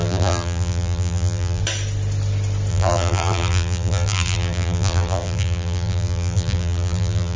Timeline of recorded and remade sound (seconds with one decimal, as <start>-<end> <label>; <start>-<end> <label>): 0.0-1.6 remade; 1.6-2.7 recorded; 2.7-7.4 remade